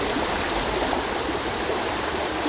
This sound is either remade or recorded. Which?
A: recorded